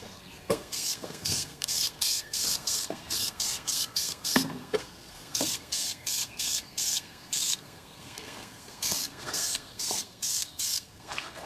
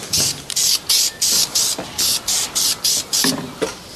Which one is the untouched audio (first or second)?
second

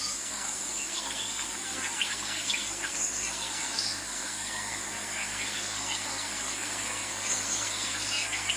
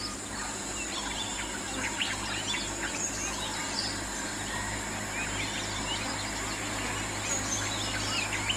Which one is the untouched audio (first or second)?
second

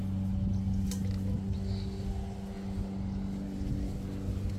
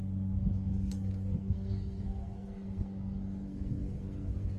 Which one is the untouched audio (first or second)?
first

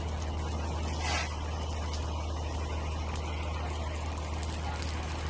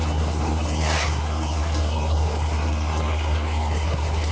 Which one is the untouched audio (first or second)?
first